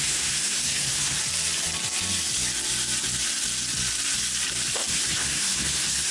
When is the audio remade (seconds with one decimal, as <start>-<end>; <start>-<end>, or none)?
0.0-1.2; 4.9-6.1

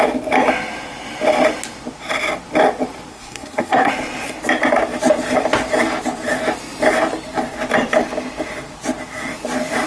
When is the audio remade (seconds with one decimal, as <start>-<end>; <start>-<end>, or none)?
3.1-3.9

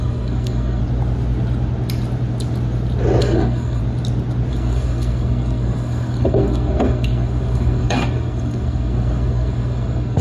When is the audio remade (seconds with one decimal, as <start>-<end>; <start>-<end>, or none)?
0.0-0.8; 3.2-3.8; 4.5-10.2